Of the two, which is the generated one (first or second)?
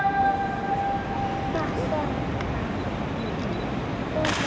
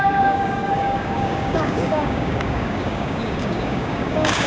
second